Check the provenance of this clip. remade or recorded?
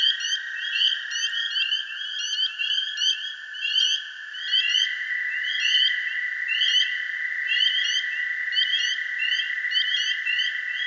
recorded